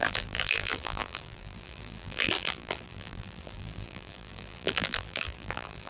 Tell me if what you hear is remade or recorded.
remade